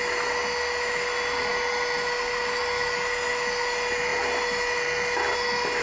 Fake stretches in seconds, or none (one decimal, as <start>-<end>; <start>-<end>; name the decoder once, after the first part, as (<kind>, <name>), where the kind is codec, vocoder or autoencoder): none